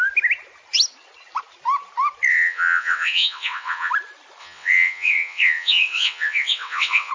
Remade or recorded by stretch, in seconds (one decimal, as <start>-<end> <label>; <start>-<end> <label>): 0.0-2.3 recorded; 2.3-3.9 remade; 3.9-4.4 recorded; 4.4-7.1 remade